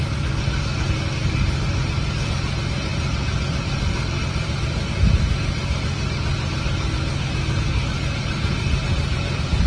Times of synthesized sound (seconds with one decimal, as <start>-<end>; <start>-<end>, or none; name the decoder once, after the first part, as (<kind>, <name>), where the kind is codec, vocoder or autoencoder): none